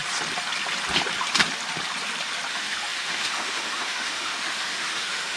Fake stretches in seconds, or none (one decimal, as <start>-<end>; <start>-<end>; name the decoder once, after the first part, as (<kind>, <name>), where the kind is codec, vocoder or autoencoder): 2.5-5.4 (autoencoder, DAC-VAE)